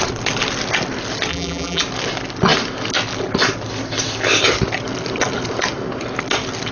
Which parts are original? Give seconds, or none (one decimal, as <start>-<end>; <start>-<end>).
0.0-1.3; 1.8-6.7